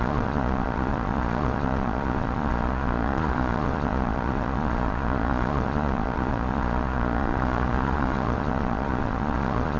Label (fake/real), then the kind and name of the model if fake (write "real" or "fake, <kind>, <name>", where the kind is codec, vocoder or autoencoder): fake, vocoder, Vocos